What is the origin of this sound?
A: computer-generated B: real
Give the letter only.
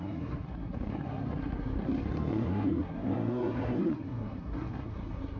A